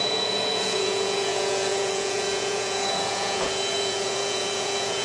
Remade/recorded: remade